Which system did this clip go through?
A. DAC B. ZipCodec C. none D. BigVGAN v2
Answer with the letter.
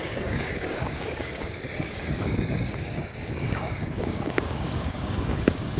A